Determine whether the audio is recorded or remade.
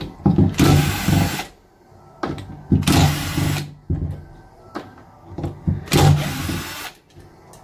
recorded